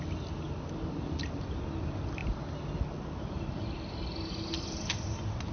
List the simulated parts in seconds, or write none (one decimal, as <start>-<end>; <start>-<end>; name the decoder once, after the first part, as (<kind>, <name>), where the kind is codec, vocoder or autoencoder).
none